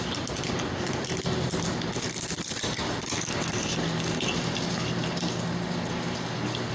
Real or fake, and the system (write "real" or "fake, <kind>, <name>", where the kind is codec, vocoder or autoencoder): real